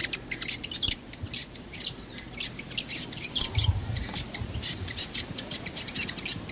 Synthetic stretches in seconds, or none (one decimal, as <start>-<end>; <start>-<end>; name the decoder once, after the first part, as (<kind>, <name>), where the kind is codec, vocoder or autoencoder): 1.4-4.3 (vocoder, BigVGAN v2)